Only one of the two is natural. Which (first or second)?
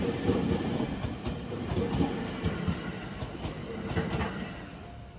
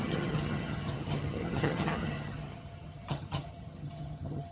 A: first